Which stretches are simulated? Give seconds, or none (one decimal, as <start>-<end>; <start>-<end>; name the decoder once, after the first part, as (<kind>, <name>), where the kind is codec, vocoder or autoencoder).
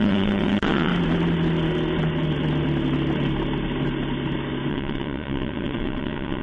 0.0-0.9 (vocoder, WaveNeXt); 4.7-6.4